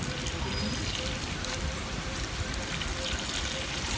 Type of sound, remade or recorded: recorded